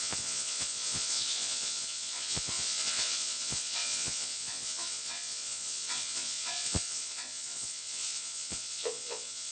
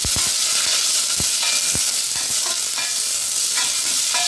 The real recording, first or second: second